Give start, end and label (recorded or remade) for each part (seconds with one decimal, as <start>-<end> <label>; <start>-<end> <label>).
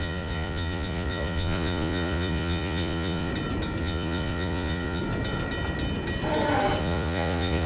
0.0-3.3 remade; 3.3-3.8 recorded; 3.8-5.0 remade; 5.0-6.8 recorded; 6.8-7.7 remade